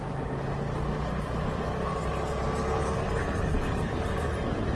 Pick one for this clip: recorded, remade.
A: recorded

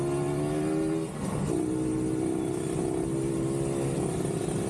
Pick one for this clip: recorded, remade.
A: recorded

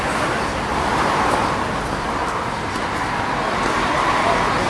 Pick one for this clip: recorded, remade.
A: recorded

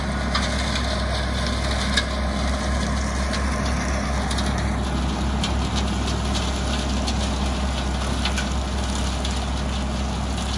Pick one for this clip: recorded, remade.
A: recorded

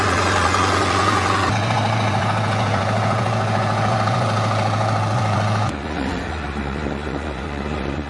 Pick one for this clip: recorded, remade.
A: remade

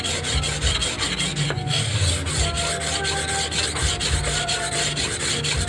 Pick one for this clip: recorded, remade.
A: recorded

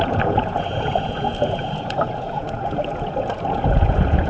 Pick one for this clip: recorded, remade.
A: remade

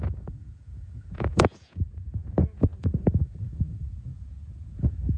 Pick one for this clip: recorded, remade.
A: remade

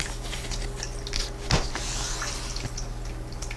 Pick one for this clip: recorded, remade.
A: recorded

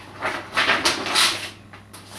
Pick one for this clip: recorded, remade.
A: recorded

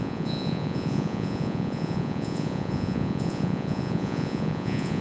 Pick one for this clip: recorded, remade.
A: remade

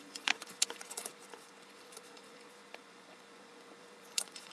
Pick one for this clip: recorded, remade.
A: remade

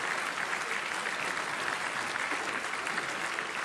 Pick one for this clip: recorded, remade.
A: recorded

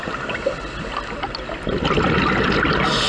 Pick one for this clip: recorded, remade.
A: recorded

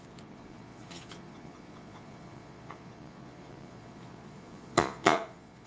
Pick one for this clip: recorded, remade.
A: remade